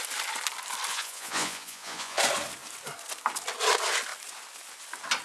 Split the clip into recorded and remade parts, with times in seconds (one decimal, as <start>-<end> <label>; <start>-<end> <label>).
0.0-0.9 recorded; 0.9-2.2 remade; 2.2-5.2 recorded